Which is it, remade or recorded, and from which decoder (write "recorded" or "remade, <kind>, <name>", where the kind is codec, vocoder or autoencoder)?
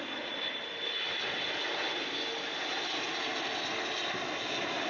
recorded